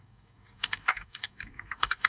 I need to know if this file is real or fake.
fake